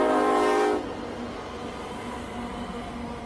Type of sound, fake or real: real